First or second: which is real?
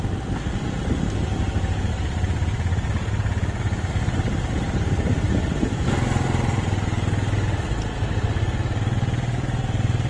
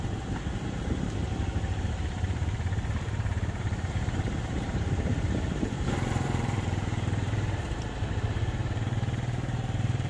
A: first